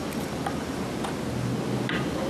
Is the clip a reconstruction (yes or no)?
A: no